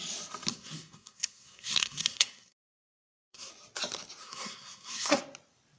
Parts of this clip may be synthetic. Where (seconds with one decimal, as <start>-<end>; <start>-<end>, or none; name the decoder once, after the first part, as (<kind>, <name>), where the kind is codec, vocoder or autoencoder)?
0.5-2.6 (codec, SNAC); 3.0-3.5; 4.2-5.2